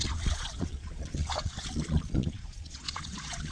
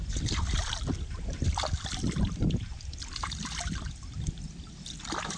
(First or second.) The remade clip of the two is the first